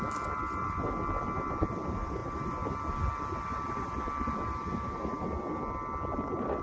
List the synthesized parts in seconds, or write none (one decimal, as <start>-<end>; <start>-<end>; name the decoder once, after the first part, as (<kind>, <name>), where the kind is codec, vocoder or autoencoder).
none

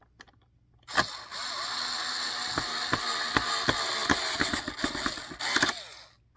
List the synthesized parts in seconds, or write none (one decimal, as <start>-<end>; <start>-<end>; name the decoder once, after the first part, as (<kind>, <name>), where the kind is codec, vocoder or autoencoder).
none

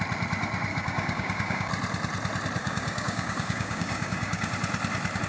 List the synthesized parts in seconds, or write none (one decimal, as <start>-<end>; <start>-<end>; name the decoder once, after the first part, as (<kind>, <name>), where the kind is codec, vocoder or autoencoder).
0.7-1.7 (codec, DAC); 2.6-4.5

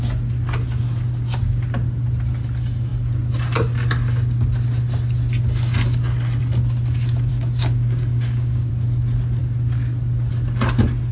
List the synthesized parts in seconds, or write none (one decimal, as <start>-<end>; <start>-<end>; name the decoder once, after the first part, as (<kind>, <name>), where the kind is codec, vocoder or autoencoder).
7.3-8.7 (codec, DAC)

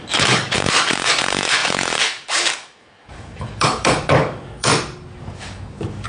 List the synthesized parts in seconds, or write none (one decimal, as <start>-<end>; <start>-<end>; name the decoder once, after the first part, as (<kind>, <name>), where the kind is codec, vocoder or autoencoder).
0.0-4.7 (codec, DAC); 5.2-6.1